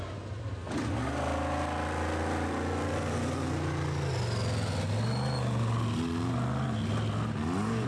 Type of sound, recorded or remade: recorded